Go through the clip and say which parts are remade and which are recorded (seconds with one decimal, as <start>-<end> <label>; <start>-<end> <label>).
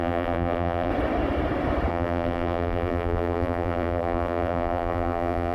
0.0-0.9 remade; 0.9-1.9 recorded; 1.9-5.5 remade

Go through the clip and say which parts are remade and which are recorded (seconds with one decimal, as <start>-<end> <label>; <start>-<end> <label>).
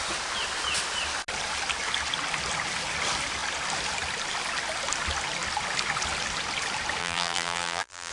0.0-7.0 recorded; 7.0-8.1 remade